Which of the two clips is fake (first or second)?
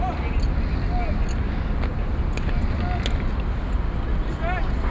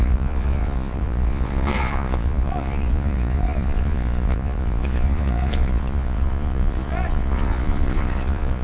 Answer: second